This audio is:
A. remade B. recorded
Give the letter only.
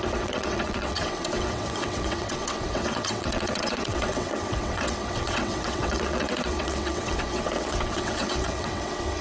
A